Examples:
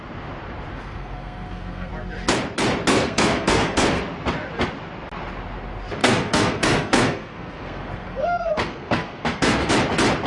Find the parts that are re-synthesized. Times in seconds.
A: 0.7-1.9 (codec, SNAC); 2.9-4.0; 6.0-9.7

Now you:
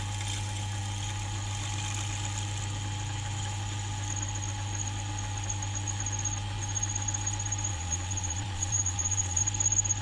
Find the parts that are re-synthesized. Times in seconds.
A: 7.7-9.4 (vocoder, Vocos)

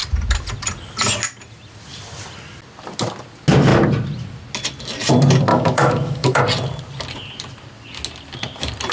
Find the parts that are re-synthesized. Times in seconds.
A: 5.5-6.4 (autoencoder, DAC-VAE)

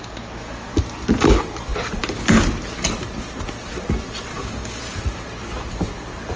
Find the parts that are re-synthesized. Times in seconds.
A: 4.3-4.8 (codec, DAC)